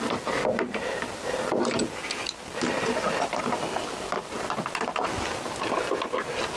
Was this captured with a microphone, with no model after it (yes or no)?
yes